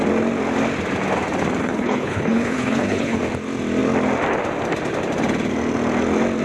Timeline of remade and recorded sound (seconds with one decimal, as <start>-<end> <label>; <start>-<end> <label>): 0.0-1.6 recorded; 1.6-3.2 remade; 3.2-6.4 recorded